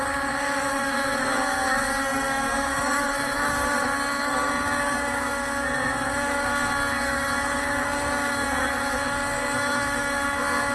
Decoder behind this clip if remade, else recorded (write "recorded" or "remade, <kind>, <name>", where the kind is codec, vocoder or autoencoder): remade, codec, SNAC